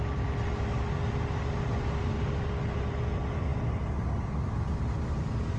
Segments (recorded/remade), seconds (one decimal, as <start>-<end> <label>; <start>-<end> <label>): 0.0-3.5 recorded; 3.5-4.3 remade; 4.3-5.6 recorded